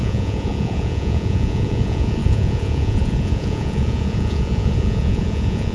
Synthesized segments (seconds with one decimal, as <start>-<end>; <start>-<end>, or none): 0.0-5.7